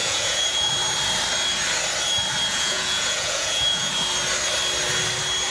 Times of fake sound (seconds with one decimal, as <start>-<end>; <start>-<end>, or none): 0.0-0.7; 2.5-3.9